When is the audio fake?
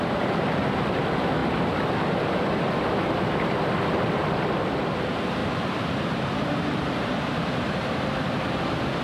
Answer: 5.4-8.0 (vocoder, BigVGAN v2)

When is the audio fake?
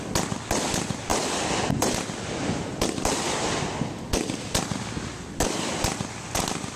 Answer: none